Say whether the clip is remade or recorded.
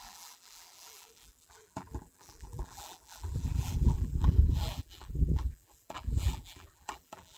remade